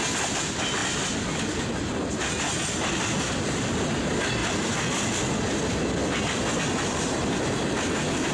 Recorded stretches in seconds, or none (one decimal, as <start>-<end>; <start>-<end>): 0.0-8.3